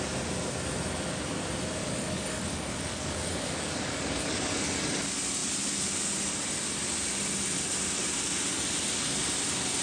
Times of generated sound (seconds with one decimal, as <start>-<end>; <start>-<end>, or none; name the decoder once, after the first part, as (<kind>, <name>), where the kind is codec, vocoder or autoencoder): 1.8-5.0 (codec, DAC)